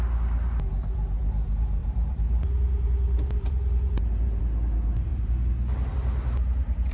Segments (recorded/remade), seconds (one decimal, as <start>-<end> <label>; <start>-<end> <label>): 0.0-1.8 recorded; 1.8-4.4 remade; 4.4-6.9 recorded